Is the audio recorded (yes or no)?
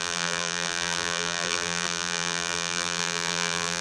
no